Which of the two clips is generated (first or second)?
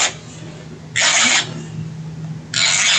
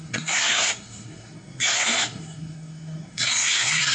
second